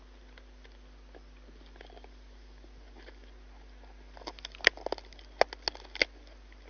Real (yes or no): yes